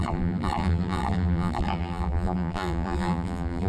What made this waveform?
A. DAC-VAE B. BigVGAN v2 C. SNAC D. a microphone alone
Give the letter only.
B